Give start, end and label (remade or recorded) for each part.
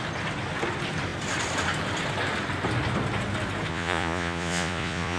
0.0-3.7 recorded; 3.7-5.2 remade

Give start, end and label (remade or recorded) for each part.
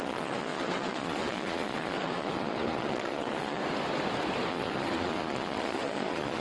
0.0-3.6 remade; 3.6-4.5 recorded; 4.5-6.4 remade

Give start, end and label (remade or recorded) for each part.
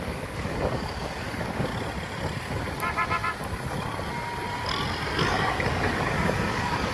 0.0-1.7 remade; 1.7-5.3 recorded; 5.3-6.9 remade